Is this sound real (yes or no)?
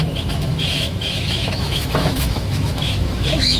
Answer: no